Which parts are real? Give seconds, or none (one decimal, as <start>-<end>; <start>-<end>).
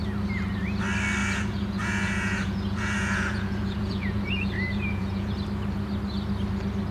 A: 0.0-1.2; 5.3-6.9